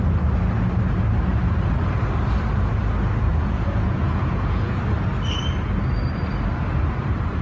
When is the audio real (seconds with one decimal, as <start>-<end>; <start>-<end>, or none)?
0.0-3.3; 4.8-7.4